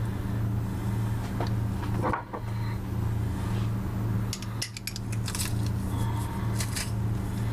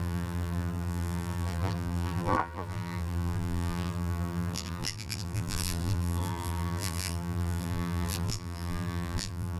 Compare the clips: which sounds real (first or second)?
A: first